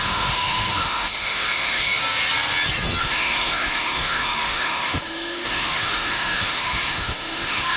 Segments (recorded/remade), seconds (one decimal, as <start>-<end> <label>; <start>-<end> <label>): 0.0-2.0 remade; 2.0-3.0 recorded; 3.0-7.8 remade